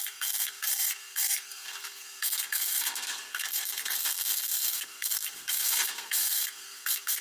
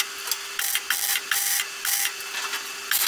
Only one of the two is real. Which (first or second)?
second